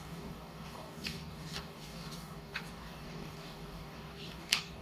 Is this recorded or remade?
remade